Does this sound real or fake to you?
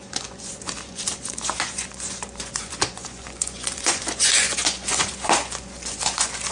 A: fake